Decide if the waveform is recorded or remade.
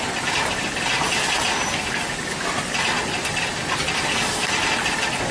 recorded